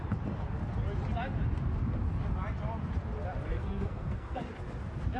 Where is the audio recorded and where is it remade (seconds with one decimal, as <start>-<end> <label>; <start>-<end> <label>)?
0.0-3.5 recorded; 3.5-4.4 remade; 4.4-5.2 recorded